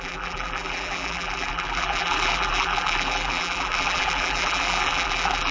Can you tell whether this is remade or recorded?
remade